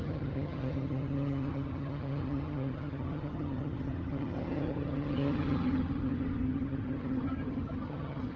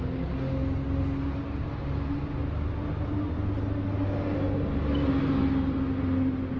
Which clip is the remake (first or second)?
first